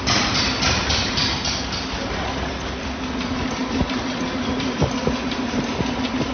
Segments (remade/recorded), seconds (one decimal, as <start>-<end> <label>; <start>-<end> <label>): 0.0-6.3 recorded